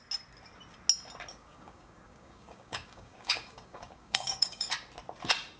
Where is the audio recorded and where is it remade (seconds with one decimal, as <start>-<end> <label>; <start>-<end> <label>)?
0.0-1.3 recorded; 1.3-4.7 remade; 4.7-5.6 recorded